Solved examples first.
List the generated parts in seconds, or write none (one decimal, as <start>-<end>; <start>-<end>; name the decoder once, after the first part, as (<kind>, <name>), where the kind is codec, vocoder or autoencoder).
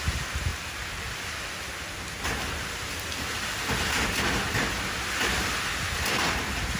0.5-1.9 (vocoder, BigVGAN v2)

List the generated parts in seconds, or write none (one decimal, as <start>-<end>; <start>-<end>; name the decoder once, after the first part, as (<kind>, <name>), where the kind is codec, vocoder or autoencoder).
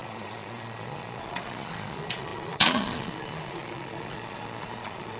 0.0-5.2 (vocoder, Vocos)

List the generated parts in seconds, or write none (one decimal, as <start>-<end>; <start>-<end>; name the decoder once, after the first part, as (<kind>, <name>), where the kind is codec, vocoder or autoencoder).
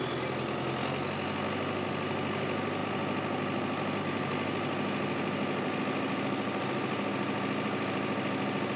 none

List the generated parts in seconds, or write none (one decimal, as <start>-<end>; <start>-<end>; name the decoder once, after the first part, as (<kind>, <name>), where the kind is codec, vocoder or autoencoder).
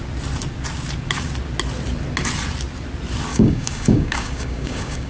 3.3-5.1 (codec, DAC)